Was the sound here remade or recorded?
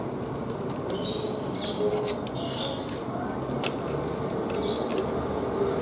recorded